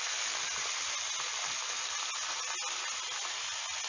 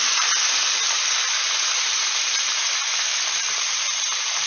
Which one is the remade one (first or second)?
second